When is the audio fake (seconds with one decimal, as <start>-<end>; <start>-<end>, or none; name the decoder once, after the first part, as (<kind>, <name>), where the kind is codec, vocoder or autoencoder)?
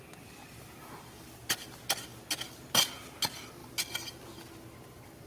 none